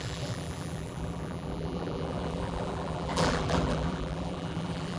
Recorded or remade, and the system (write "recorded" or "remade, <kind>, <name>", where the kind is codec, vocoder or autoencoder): remade, vocoder, BigVGAN v2